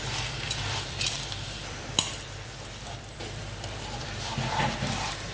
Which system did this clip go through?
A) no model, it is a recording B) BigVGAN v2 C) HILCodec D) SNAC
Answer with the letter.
B